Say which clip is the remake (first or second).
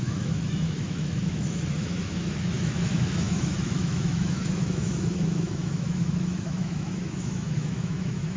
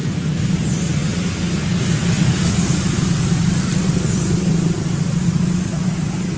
first